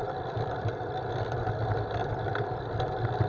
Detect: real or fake fake